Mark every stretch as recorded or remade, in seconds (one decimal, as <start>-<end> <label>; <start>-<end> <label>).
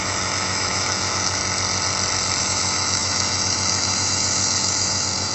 0.0-1.4 remade; 1.4-2.4 recorded; 2.4-5.3 remade